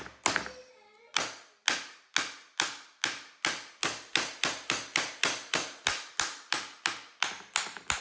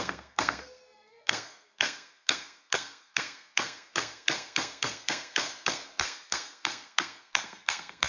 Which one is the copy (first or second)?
second